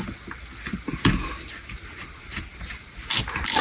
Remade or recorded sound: recorded